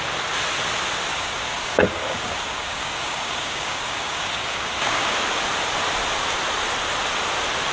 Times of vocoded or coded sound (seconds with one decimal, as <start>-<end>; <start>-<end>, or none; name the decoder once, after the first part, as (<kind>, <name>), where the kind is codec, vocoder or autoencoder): 1.1-5.1 (codec, DAC)